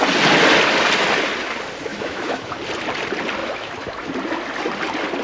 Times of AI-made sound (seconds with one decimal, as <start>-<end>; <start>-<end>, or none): 1.9-2.6; 3.4-4.1